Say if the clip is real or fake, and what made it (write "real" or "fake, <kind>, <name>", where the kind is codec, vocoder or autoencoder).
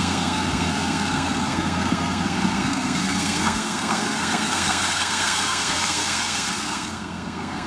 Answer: fake, codec, SNAC